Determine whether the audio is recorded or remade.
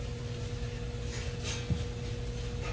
recorded